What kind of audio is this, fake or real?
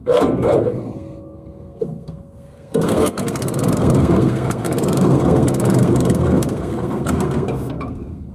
fake